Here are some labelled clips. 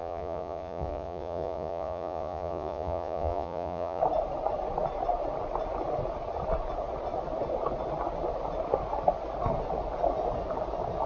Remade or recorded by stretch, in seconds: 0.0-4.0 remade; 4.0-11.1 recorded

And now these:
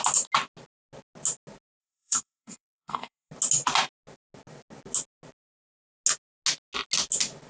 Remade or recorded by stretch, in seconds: 0.0-1.8 recorded; 1.8-3.3 remade; 3.3-7.5 recorded

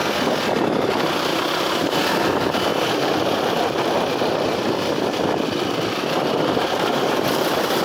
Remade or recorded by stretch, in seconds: 0.0-0.9 recorded; 0.9-1.3 remade; 1.3-2.1 recorded; 2.1-7.8 remade

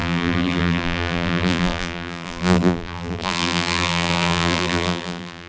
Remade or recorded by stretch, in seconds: 0.0-5.5 remade